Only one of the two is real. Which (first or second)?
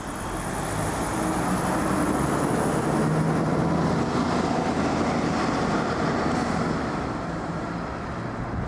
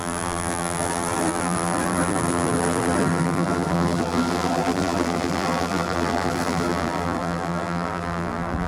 first